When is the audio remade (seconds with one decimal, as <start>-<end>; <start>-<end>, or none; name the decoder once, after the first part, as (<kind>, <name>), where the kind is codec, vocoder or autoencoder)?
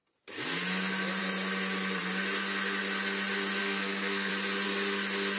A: 3.6-4.3 (codec, SNAC)